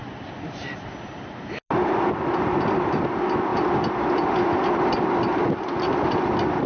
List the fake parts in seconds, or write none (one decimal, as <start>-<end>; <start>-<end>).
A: none